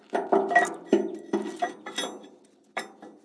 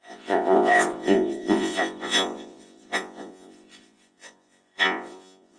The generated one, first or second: second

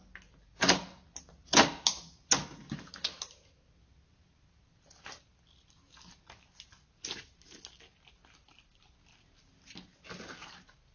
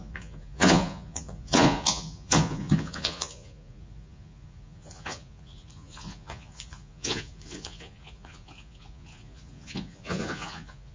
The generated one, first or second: second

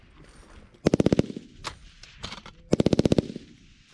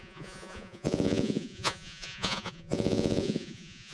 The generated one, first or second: second